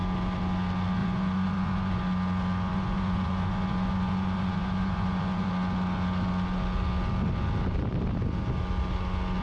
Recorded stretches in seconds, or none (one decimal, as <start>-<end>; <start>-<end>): 0.0-1.0; 2.0-2.7; 5.5-9.4